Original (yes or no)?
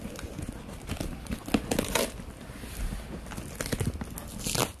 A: yes